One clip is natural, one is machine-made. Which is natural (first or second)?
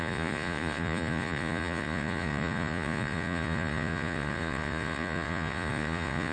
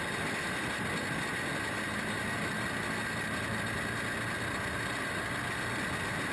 second